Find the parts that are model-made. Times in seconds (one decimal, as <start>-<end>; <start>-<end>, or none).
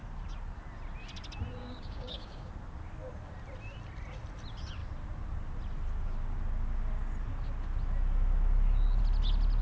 1.6-2.5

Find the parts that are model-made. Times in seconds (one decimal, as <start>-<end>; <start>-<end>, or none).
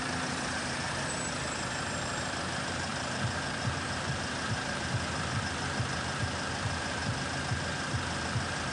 0.0-7.0; 8.2-8.7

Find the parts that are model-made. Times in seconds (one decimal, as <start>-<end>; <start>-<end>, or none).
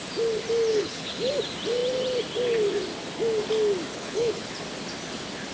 0.7-1.3; 3.9-4.6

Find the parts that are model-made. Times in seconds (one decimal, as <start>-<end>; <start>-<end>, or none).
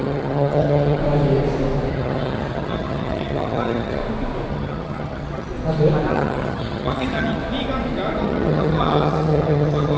0.0-1.0; 1.9-4.0; 4.5-5.5; 6.1-7.4; 8.2-10.0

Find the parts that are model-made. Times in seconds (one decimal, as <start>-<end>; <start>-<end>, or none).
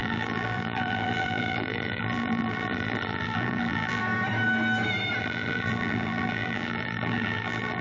0.0-4.0; 5.2-7.8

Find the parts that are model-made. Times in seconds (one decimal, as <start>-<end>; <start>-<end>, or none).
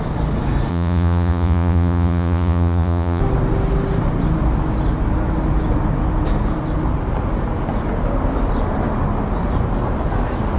0.7-3.2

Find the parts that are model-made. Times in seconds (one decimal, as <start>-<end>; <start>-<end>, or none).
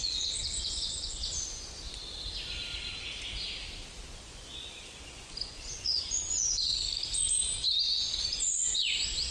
0.0-2.0; 4.1-6.7; 8.2-9.3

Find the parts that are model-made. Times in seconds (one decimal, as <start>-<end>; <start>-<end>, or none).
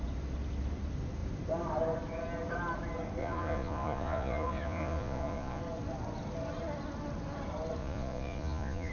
3.2-5.6; 7.8-8.9